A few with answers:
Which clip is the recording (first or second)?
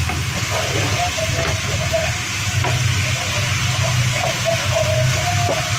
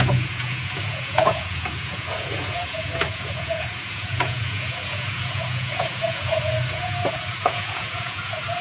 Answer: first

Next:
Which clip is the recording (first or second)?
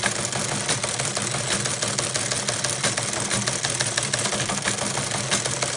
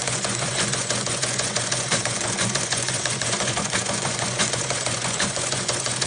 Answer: first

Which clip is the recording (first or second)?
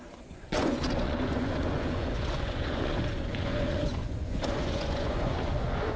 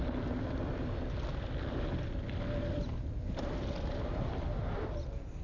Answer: second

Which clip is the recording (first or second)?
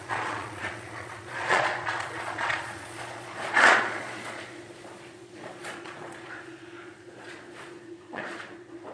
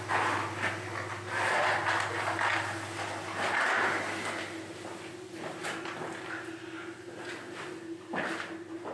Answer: second